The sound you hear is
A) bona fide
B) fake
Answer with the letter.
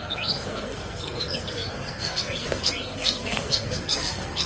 B